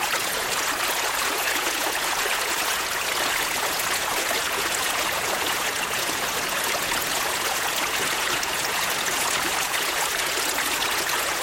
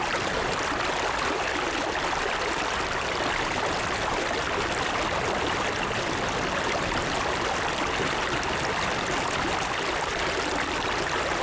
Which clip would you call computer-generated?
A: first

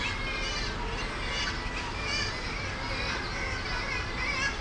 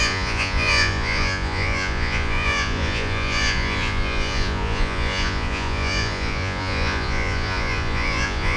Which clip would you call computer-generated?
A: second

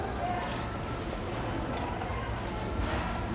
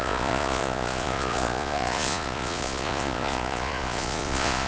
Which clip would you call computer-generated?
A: second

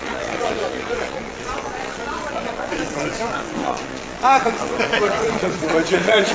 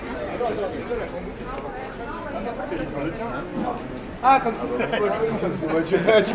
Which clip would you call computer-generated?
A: first